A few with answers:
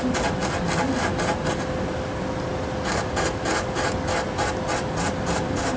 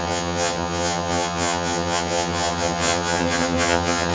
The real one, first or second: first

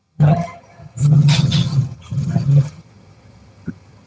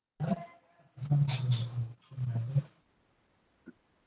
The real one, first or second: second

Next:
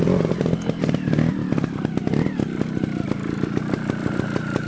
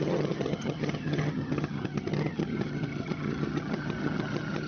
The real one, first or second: first